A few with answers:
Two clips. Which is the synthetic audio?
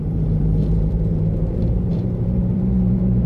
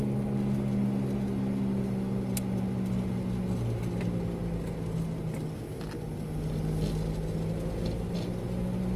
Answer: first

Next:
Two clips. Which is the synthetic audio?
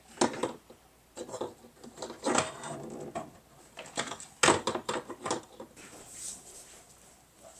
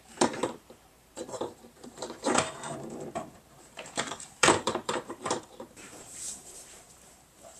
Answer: second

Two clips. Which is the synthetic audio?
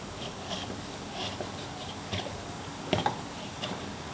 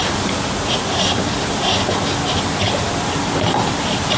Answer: first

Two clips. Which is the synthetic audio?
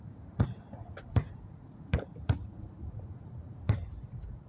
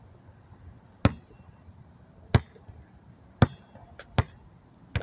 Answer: first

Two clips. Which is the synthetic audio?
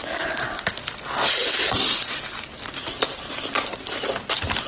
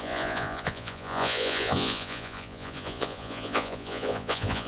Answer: second